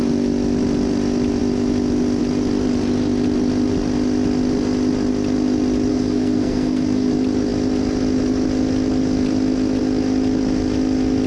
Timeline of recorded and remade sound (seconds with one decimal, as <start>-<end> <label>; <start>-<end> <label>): 0.0-5.9 recorded; 5.9-7.1 remade; 7.1-11.3 recorded